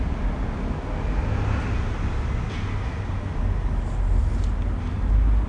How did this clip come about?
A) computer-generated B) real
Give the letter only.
B